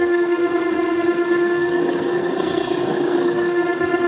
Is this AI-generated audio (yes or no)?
yes